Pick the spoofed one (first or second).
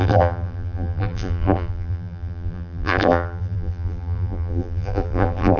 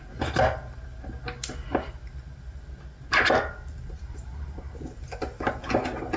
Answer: first